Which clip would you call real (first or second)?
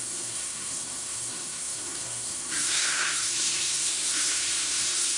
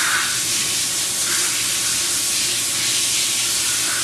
second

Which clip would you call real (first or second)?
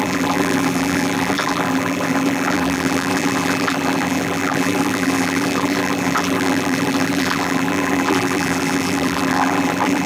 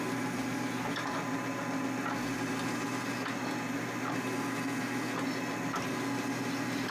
second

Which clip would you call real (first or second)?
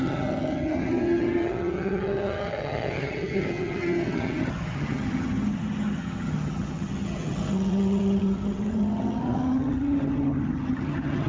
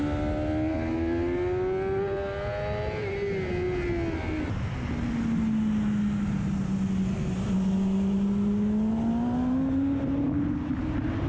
second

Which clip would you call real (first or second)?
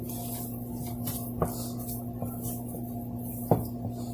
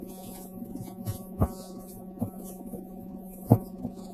first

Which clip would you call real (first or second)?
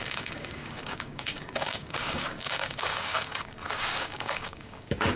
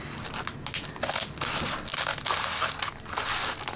second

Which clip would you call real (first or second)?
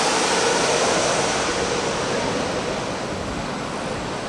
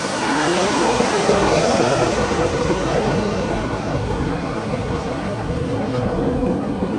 first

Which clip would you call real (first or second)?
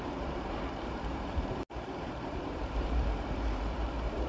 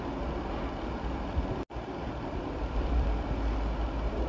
second